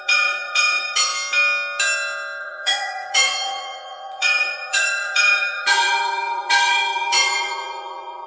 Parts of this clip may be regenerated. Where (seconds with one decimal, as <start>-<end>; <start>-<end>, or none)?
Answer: 0.0-1.1; 2.4-8.3